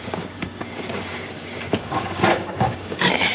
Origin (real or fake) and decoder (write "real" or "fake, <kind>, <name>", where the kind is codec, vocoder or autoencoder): fake, codec, DAC